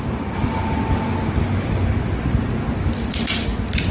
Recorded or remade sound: recorded